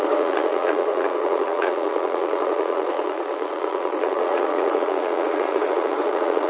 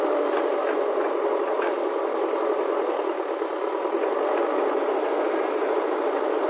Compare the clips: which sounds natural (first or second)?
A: second